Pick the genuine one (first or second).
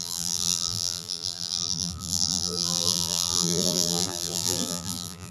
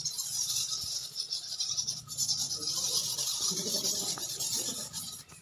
second